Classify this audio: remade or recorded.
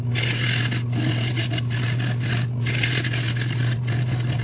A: recorded